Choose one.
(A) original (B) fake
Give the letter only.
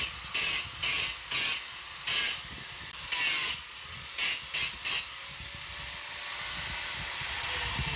A